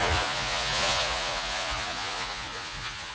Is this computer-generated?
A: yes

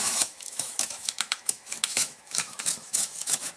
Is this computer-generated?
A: yes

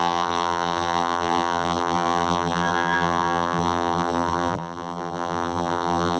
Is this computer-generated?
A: yes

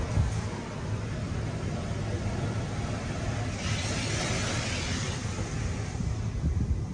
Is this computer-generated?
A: no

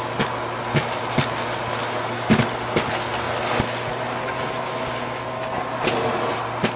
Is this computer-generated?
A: no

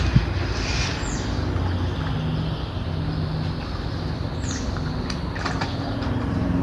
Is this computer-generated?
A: no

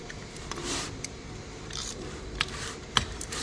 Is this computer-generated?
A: yes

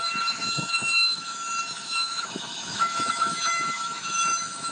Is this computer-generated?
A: yes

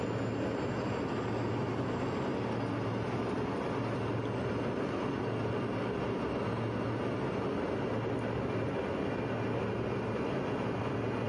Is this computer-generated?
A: no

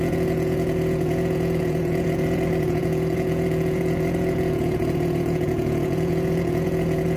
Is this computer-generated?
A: yes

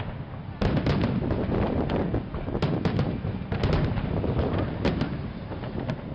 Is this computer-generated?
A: no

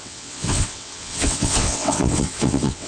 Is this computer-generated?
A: yes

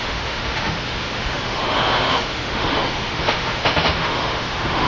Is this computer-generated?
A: yes